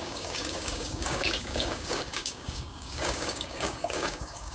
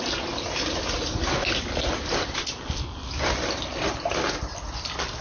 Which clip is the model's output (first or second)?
first